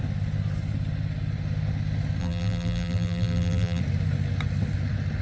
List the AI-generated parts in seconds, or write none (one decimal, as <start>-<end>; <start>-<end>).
2.2-3.8